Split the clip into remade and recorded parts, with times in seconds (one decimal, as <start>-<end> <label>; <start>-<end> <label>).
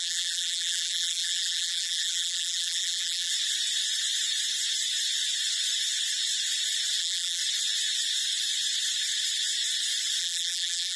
0.0-3.3 remade; 3.3-7.0 recorded; 7.0-7.4 remade; 7.4-10.2 recorded; 10.2-11.0 remade